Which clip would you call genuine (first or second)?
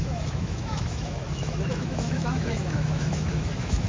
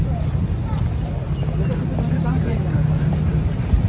second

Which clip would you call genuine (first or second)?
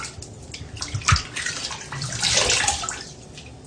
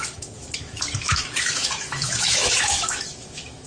first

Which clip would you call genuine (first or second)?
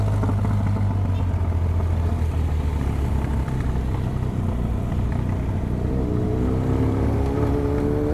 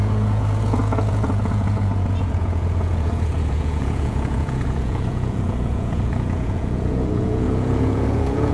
first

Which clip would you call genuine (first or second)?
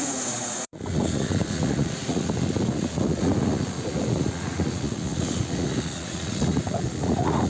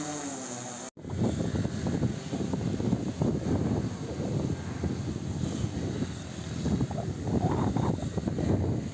second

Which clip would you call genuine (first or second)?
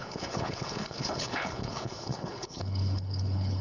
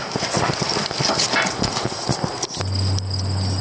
second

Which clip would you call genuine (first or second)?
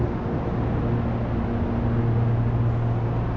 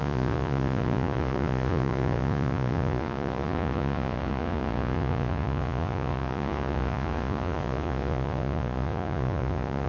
first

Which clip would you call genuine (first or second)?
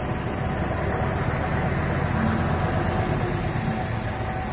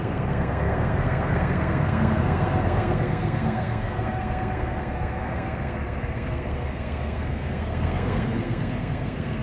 first